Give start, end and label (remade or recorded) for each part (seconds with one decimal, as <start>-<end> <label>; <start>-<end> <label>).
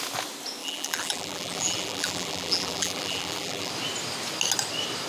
0.0-0.6 recorded; 0.6-3.7 remade; 3.7-5.1 recorded